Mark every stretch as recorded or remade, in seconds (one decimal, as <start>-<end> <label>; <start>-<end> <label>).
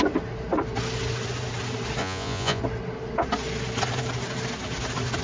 0.0-2.0 recorded; 2.0-2.6 remade; 2.6-5.2 recorded